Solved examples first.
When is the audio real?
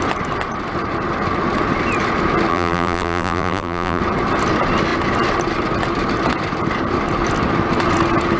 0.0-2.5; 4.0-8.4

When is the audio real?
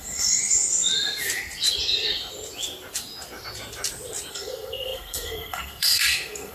0.4-4.3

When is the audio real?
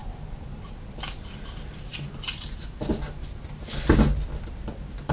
0.6-5.1